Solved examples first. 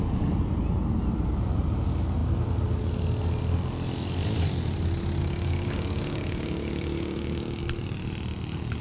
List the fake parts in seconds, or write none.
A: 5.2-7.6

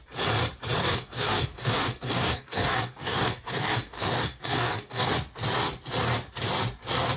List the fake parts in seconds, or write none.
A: 0.8-5.1

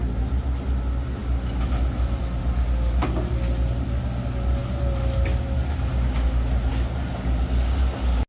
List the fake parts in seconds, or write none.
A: none

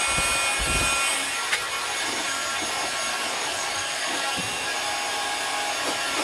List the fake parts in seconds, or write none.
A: 3.1-4.4